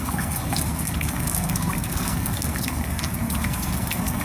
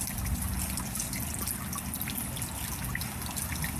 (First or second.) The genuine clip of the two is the second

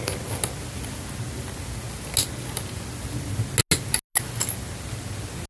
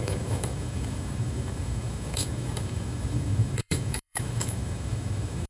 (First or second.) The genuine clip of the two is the first